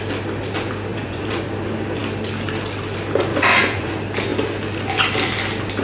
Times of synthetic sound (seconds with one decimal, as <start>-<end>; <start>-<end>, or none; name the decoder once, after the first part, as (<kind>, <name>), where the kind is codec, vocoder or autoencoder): 0.9-1.5 (vocoder, Vocos); 3.3-3.9